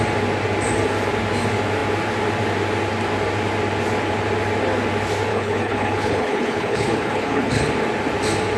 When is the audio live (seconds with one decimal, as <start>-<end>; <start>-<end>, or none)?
0.0-5.3; 7.7-8.6